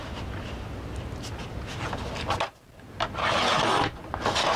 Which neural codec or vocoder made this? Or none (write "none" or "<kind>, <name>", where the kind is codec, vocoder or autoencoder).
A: none